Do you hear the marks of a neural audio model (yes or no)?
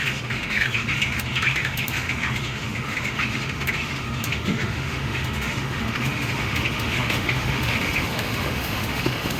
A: yes